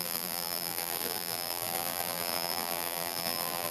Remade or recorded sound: remade